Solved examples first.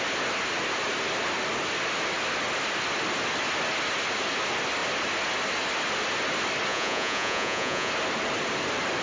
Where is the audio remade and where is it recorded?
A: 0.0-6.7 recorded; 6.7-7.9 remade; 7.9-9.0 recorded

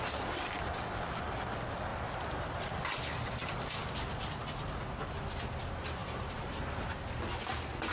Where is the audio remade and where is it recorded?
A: 0.0-1.9 recorded; 1.9-2.6 remade; 2.6-6.0 recorded; 6.0-6.8 remade; 6.8-7.9 recorded

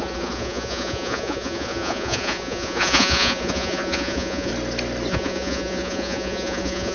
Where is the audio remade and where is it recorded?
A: 0.0-4.5 remade; 4.5-5.1 recorded; 5.1-6.9 remade

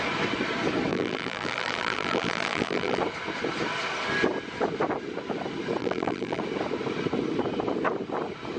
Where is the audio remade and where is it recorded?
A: 0.0-0.9 recorded; 0.9-3.0 remade; 3.0-5.8 recorded; 5.8-6.4 remade; 6.4-8.6 recorded

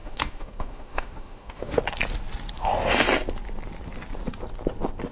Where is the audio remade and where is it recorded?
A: 0.0-1.8 remade; 1.8-5.1 recorded

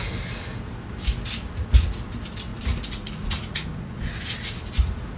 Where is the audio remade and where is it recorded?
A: 0.0-2.5 recorded; 2.5-4.1 remade; 4.1-5.2 recorded